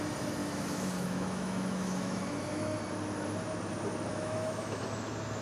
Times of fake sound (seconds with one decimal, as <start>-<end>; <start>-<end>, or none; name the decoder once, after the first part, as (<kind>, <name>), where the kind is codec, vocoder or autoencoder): 0.4-2.8 (autoencoder, DAC-VAE); 4.1-4.8